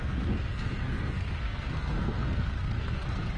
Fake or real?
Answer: fake